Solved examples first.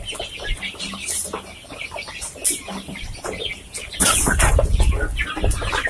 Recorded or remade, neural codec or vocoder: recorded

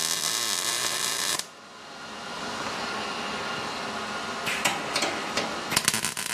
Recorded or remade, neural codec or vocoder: recorded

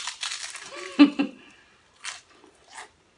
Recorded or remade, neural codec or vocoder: recorded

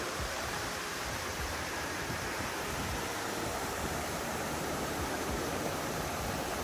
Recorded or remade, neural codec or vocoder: remade, vocoder, BigVGAN v2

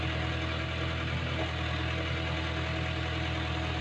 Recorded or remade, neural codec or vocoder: recorded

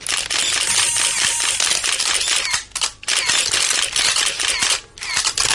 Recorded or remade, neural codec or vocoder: recorded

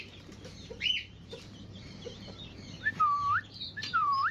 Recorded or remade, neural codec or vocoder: remade, vocoder, BigVGAN v2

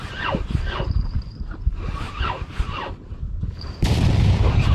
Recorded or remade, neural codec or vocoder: remade, vocoder, BigVGAN v2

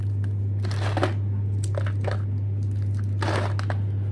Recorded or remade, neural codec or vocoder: recorded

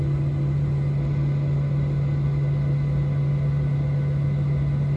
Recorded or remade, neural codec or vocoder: recorded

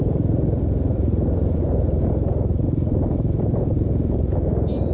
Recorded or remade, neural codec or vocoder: remade, vocoder, BigVGAN v2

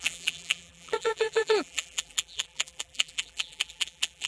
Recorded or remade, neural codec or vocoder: remade, vocoder, BigVGAN v2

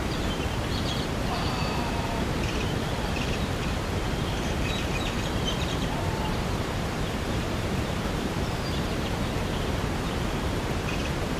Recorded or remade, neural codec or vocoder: remade, vocoder, BigVGAN v2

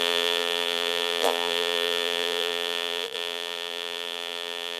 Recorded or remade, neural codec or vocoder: remade, vocoder, BigVGAN v2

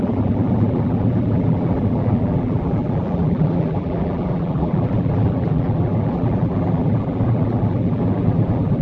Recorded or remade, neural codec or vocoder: remade, vocoder, BigVGAN v2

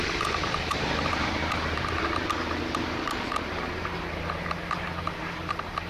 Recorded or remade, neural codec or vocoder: remade, vocoder, BigVGAN v2